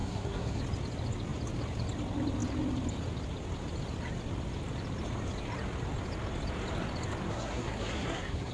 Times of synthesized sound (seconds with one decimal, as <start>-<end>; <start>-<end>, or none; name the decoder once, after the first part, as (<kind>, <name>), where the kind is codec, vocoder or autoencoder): 0.0-0.6 (codec, SNAC); 7.3-8.5